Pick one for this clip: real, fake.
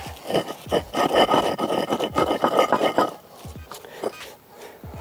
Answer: real